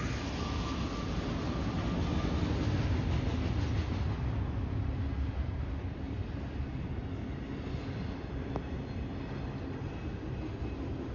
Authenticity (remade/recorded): recorded